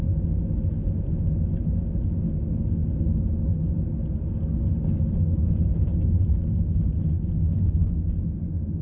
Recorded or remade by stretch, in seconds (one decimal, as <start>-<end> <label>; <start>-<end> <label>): 0.0-8.8 recorded